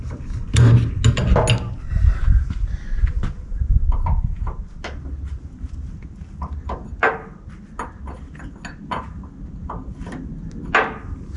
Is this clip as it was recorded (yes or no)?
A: yes